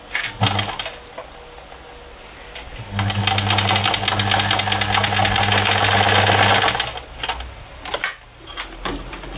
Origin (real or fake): real